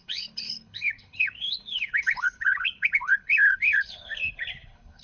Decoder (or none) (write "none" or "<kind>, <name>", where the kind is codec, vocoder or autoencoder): codec, HILCodec